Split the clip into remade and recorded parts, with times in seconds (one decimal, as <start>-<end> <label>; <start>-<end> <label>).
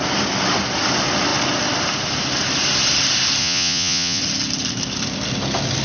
0.0-3.4 recorded; 3.4-4.2 remade; 4.2-5.8 recorded